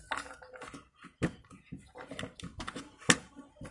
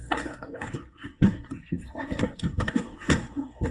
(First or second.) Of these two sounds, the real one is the first